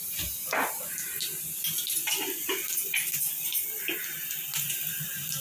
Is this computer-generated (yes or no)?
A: no